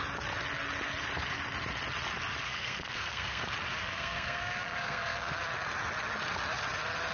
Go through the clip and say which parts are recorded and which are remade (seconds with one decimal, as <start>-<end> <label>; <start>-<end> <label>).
0.0-2.4 recorded; 2.4-3.4 remade; 3.4-3.8 recorded; 3.8-5.3 remade; 5.3-7.1 recorded